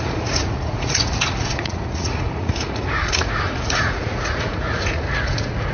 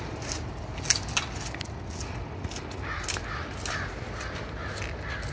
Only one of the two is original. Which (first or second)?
second